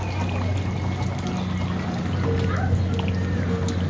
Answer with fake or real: real